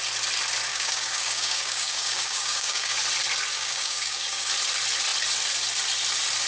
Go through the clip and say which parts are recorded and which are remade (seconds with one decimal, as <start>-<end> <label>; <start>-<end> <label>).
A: 0.0-0.7 recorded; 0.7-3.0 remade; 3.0-3.5 recorded; 3.5-4.5 remade; 4.5-6.5 recorded